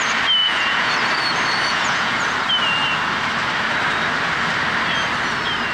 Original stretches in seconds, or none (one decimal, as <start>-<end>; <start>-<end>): 0.0-0.4; 0.9-1.7; 2.2-5.7